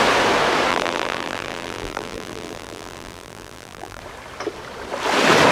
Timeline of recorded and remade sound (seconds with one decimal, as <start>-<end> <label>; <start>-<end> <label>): 0.0-0.7 recorded; 0.7-4.0 remade; 4.0-5.5 recorded